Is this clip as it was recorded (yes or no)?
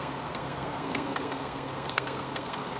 no